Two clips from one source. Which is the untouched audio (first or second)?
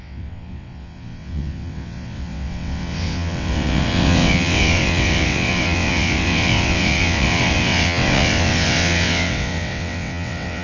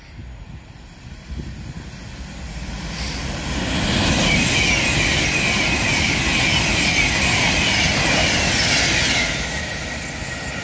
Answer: second